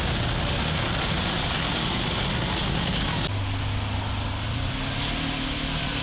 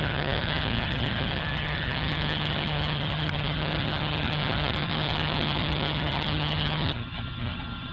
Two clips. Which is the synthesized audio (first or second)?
second